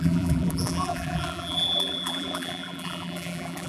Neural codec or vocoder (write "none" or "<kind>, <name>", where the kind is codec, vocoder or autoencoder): vocoder, BigVGAN v2